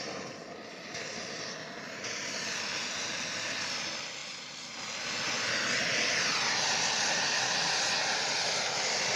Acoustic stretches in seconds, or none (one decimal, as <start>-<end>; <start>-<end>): 0.0-9.2